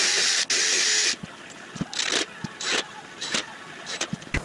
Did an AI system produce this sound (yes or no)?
no